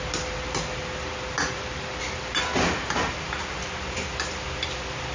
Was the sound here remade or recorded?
recorded